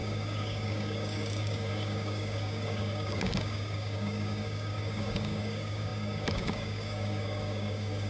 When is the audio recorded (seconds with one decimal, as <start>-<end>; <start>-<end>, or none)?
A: none